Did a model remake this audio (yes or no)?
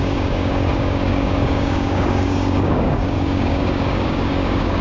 yes